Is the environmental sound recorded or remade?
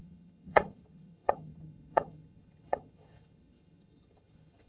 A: remade